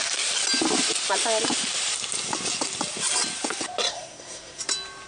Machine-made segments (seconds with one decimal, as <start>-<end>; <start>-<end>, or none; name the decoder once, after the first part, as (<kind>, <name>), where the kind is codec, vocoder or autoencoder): 3.9-4.6 (codec, SNAC)

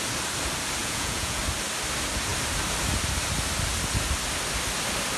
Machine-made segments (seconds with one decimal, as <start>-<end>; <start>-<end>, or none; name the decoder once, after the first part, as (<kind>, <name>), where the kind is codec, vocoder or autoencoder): 0.8-1.4 (vocoder, Vocos)

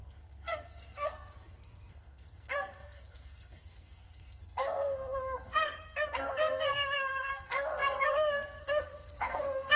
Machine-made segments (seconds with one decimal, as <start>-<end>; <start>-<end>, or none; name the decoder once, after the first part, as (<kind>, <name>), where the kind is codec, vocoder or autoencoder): 0.0-9.8 (codec, SNAC)